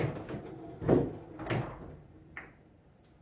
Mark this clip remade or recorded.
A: recorded